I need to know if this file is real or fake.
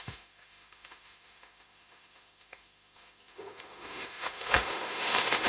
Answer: fake